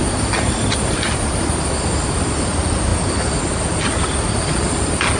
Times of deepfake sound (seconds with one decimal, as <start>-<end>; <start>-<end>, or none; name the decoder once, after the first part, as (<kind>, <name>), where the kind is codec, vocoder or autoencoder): none